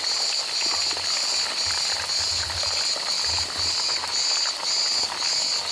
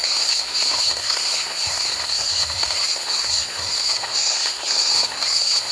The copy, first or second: second